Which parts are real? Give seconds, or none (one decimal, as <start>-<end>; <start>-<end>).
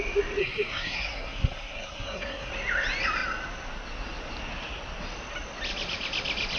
0.0-0.4; 2.5-6.6